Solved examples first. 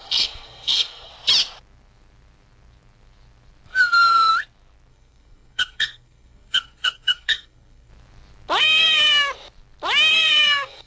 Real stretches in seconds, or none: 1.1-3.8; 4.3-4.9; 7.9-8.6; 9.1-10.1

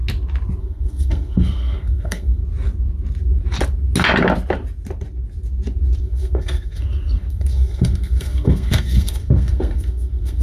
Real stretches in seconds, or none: 0.0-0.6; 2.4-6.0

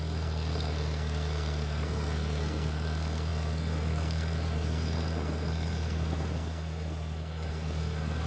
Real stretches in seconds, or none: none

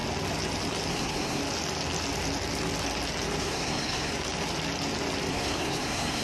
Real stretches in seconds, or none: 0.0-0.9; 1.4-3.4; 4.1-5.3

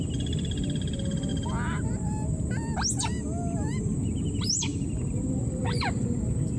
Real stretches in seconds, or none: 0.0-6.6